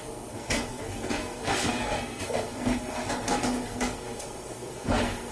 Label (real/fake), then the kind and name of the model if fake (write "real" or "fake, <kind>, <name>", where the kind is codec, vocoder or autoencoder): fake, codec, SNAC